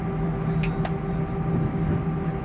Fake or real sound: real